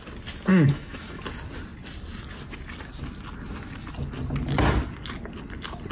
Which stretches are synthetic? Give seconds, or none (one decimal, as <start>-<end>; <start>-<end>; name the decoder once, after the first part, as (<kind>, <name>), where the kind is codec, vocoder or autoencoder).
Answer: 0.5-1.2 (autoencoder, DAC-VAE)